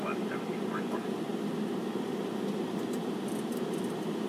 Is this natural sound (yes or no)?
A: yes